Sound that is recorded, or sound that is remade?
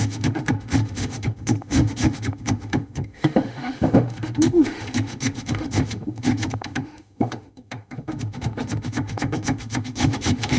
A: remade